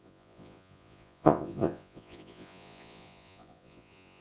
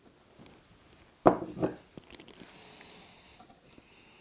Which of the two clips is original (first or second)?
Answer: second